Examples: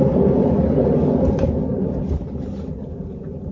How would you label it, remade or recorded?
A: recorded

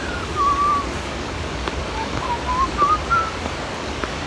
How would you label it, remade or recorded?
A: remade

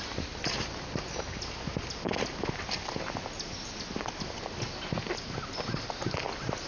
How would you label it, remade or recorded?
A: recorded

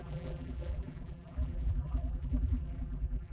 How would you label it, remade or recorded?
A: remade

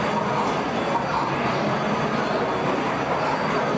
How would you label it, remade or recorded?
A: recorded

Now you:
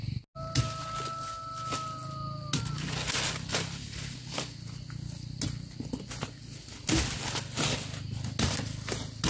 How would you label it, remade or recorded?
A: recorded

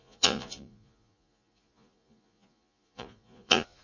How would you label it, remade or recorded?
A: remade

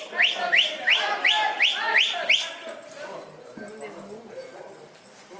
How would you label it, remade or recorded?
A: recorded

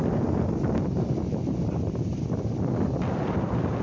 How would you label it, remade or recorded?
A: recorded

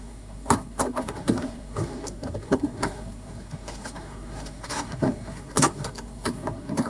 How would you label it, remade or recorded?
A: remade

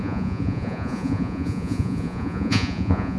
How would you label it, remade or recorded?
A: remade